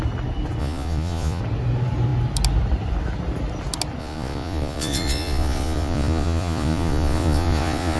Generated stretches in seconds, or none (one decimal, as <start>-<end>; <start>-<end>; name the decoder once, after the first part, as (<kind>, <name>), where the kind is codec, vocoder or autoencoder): 0.6-1.4 (vocoder, Vocos); 4.0-8.0